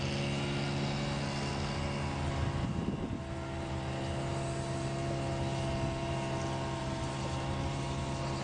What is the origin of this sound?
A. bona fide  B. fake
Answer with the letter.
A